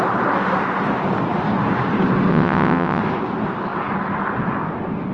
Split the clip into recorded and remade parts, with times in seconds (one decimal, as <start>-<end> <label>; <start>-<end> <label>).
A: 0.0-2.3 recorded; 2.3-3.0 remade; 3.0-5.1 recorded